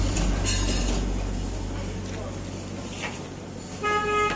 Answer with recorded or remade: recorded